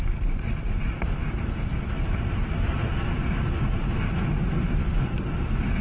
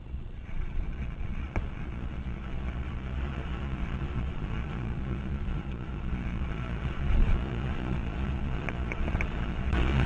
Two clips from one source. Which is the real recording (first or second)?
first